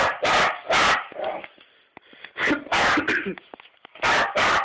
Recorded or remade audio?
remade